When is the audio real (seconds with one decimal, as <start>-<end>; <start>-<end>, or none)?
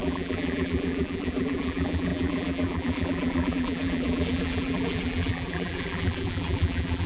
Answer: none